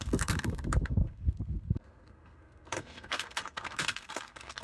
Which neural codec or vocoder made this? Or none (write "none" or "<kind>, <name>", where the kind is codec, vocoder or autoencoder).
codec, SNAC